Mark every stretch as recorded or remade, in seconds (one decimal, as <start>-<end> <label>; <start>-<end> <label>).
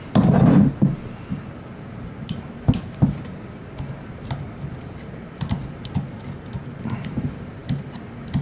0.0-2.2 recorded; 2.2-2.7 remade; 2.7-3.6 recorded; 3.6-7.1 remade; 7.1-8.4 recorded